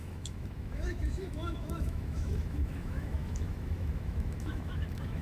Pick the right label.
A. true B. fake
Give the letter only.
B